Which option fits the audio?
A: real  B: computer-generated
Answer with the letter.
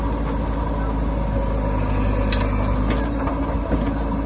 A